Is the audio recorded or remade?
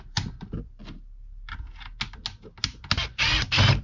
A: recorded